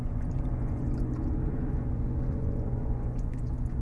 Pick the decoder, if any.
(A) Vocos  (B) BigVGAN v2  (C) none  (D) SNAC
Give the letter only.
A